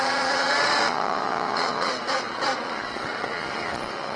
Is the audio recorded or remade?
remade